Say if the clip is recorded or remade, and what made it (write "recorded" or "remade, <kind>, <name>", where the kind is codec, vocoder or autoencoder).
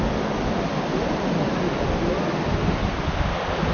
recorded